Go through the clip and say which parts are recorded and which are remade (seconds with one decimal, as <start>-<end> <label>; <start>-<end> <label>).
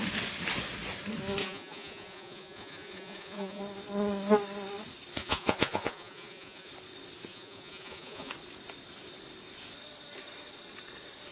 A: 0.0-1.4 recorded; 1.4-3.6 remade; 3.6-5.2 recorded; 5.2-6.7 remade; 6.7-7.3 recorded; 7.3-8.3 remade; 8.3-11.3 recorded